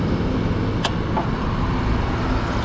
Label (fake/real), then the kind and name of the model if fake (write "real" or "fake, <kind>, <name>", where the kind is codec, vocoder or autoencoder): real